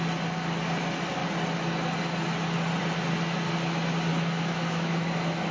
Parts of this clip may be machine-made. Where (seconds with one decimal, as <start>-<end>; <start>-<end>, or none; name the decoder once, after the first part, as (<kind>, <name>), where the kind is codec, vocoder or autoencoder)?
4.1-5.1 (autoencoder, DAC-VAE)